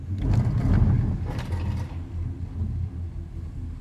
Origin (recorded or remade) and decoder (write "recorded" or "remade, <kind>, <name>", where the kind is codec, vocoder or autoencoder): recorded